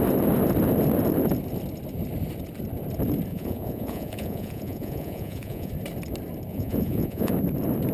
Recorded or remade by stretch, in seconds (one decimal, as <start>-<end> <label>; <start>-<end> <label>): 0.0-3.3 recorded; 3.3-5.7 remade; 5.7-6.5 recorded; 6.5-7.3 remade; 7.3-7.9 recorded

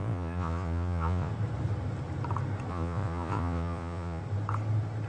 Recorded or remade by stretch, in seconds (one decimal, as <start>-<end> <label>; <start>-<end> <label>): 0.0-1.3 remade; 1.3-2.7 recorded; 2.7-4.2 remade; 4.2-5.1 recorded

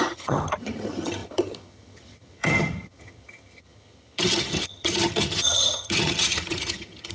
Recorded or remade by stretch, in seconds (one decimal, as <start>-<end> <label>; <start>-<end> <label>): 0.0-7.1 remade